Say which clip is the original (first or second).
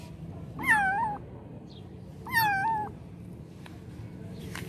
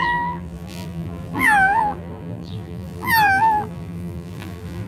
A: first